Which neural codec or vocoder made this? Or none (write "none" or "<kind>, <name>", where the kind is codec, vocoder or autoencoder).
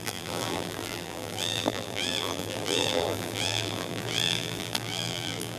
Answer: vocoder, BigVGAN v2